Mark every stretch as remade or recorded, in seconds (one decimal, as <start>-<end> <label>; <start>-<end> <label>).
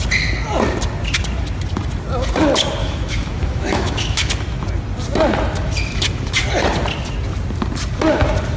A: 0.0-2.8 recorded; 2.8-4.3 remade; 4.3-8.6 recorded